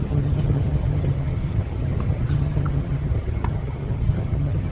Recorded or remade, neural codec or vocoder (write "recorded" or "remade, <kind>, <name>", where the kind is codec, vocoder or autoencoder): remade, vocoder, HiFi-GAN